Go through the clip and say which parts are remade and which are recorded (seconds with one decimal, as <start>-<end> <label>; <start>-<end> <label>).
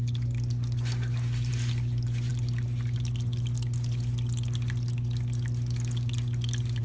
0.0-6.8 recorded